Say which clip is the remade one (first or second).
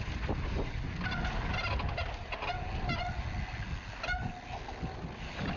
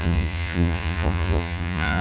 second